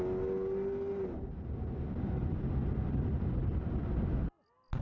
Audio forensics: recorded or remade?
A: recorded